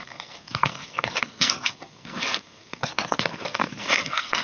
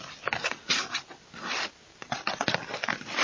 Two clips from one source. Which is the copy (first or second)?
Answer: first